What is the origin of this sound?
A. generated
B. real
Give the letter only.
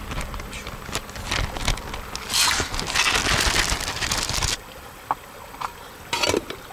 B